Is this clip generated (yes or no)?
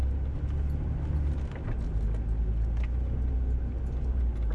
no